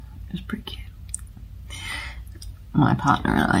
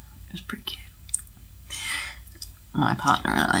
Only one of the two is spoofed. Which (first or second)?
second